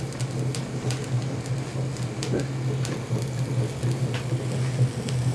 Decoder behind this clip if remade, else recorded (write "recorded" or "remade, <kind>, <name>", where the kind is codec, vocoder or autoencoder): recorded